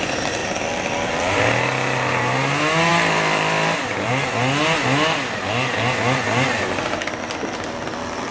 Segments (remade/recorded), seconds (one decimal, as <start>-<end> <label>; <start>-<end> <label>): 0.0-0.4 recorded; 0.4-1.2 remade; 1.2-2.9 recorded; 2.9-4.1 remade; 4.1-8.3 recorded